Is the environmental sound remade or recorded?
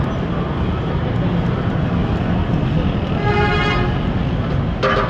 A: recorded